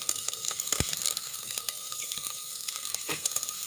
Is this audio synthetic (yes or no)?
yes